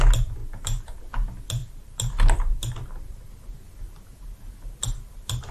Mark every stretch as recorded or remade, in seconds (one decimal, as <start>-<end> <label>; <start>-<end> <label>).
0.0-0.4 recorded; 0.4-1.0 remade; 1.0-1.6 recorded; 1.6-3.3 remade; 3.3-5.5 recorded

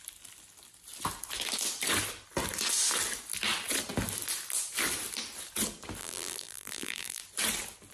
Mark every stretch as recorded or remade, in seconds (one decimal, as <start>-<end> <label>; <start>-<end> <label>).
0.0-6.0 recorded; 6.0-7.2 remade; 7.2-7.9 recorded

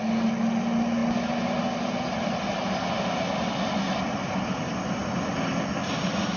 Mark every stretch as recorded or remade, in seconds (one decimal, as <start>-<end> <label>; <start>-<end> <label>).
0.0-6.4 recorded

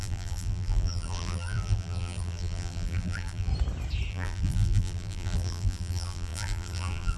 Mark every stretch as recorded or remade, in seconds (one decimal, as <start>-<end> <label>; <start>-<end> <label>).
0.0-3.5 remade; 3.5-4.1 recorded; 4.1-7.2 remade

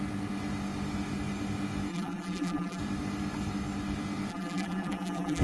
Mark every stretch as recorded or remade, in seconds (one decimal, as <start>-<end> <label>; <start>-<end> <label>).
0.0-1.9 recorded; 1.9-2.8 remade; 2.8-4.3 recorded; 4.3-5.4 remade